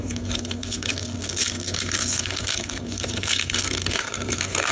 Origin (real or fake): fake